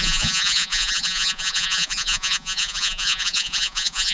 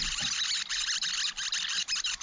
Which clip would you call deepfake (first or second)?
first